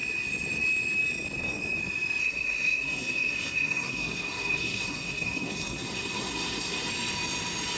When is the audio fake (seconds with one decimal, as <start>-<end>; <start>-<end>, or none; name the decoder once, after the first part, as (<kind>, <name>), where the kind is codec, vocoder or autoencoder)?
2.2-6.9 (codec, SNAC)